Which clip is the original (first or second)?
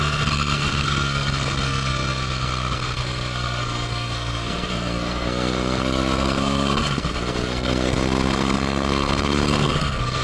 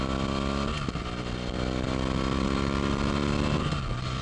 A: second